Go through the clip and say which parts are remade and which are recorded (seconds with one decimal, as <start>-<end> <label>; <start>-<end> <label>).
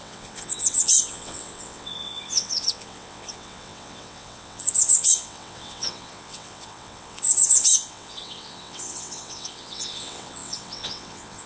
0.0-11.5 remade